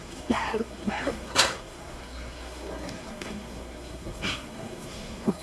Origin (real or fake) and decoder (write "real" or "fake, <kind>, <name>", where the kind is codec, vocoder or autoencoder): fake, codec, SNAC